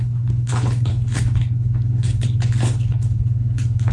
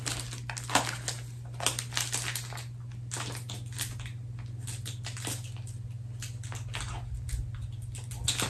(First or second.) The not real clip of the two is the first